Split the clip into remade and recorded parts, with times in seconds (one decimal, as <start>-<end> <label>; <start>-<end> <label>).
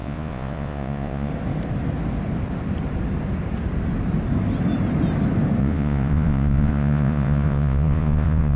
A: 0.0-1.3 remade; 1.3-5.6 recorded; 5.6-8.6 remade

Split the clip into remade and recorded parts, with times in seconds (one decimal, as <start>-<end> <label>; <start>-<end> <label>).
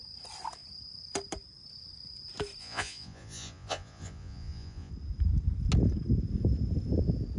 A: 0.0-2.6 recorded; 2.6-4.9 remade; 4.9-7.4 recorded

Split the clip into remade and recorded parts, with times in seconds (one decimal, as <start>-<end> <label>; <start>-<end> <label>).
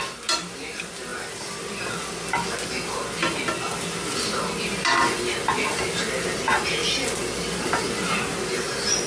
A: 0.0-9.1 recorded